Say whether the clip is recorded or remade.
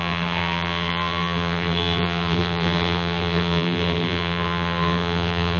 remade